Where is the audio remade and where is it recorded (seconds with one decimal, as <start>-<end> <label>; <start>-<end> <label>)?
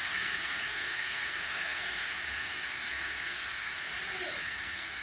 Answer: 0.0-3.9 remade; 3.9-4.4 recorded; 4.4-5.0 remade